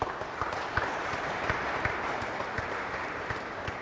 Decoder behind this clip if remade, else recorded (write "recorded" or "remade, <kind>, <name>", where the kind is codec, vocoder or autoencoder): remade, vocoder, BigVGAN v2